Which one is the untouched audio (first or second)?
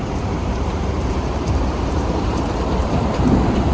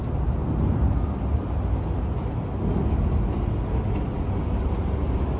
second